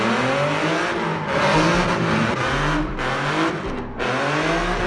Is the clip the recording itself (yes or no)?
yes